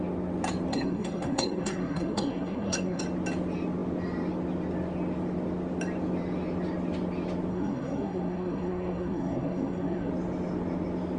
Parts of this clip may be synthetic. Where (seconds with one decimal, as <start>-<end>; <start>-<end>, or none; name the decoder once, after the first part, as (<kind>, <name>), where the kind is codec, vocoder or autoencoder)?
0.7-3.0 (codec, SNAC); 7.5-10.1